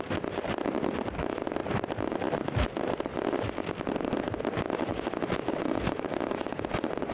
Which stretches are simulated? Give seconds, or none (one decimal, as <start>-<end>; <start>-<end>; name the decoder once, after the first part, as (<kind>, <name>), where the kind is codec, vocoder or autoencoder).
none